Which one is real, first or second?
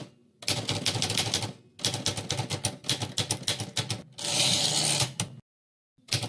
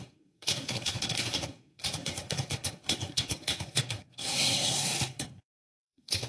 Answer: first